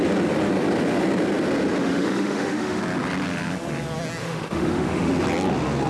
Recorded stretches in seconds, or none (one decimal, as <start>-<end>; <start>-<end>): 0.0-1.8; 2.8-4.2; 5.1-5.9